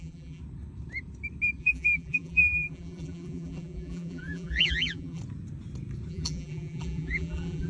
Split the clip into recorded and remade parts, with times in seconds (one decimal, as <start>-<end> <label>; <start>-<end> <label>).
0.0-0.4 remade; 0.4-1.6 recorded; 1.6-5.2 remade; 5.2-6.1 recorded; 6.1-7.7 remade